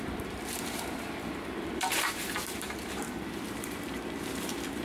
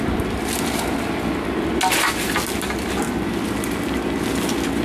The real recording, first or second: second